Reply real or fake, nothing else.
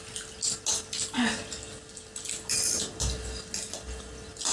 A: real